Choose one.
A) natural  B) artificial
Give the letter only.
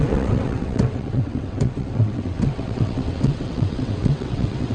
B